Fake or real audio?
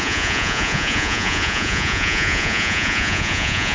fake